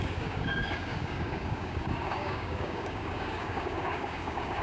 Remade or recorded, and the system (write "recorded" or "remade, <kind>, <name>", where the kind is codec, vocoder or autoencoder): remade, codec, DAC